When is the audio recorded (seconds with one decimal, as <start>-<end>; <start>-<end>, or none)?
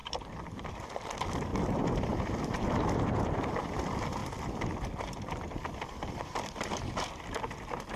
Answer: 1.5-2.1